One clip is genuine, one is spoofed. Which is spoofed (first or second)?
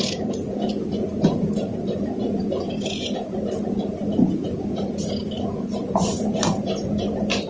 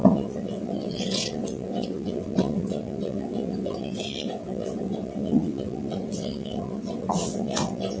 second